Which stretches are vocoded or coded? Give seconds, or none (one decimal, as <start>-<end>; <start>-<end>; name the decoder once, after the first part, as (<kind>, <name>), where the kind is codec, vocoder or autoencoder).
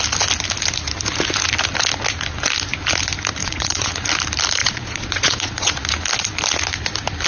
3.4-3.9 (vocoder, Vocos); 4.6-5.7